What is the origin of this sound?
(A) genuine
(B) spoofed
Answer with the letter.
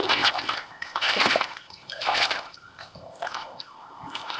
B